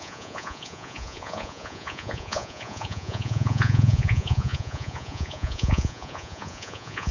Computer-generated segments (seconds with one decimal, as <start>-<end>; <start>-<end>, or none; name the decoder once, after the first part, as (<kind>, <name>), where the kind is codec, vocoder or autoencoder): 0.0-7.1 (vocoder, Vocos)